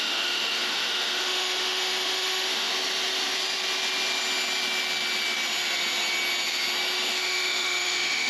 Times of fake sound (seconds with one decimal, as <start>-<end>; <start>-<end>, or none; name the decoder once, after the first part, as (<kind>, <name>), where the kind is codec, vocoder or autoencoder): 0.0-2.7 (autoencoder, DAC-VAE); 7.1-8.3